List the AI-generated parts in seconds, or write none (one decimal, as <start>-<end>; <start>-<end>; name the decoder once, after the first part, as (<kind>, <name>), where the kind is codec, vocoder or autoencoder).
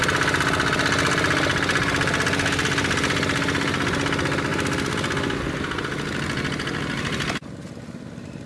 none